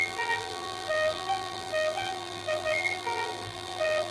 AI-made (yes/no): yes